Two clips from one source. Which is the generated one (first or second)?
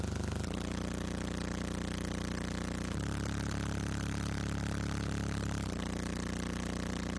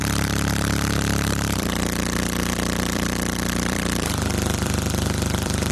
second